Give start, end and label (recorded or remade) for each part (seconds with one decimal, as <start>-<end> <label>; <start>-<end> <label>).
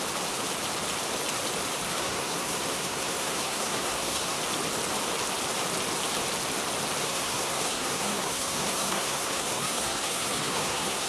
0.0-1.9 recorded; 1.9-4.4 remade; 4.4-7.0 recorded; 7.0-11.1 remade